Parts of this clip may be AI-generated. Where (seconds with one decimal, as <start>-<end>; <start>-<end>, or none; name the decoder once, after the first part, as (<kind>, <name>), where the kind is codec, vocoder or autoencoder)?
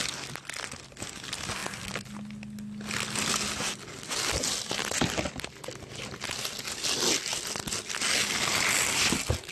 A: none